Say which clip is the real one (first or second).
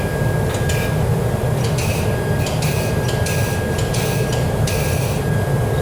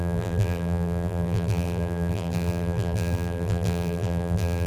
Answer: first